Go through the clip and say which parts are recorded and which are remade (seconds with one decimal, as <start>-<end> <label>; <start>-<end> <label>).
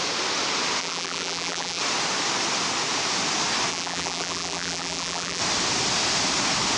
0.0-0.8 recorded; 0.8-1.8 remade; 1.8-3.7 recorded; 3.7-5.4 remade; 5.4-6.8 recorded